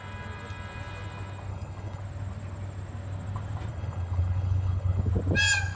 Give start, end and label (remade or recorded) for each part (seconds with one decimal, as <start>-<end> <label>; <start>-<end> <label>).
0.0-1.5 recorded; 1.5-2.0 remade; 2.0-3.7 recorded; 3.7-5.1 remade; 5.1-5.8 recorded